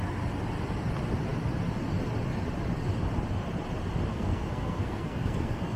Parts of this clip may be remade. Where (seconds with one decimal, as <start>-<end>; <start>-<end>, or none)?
4.1-5.8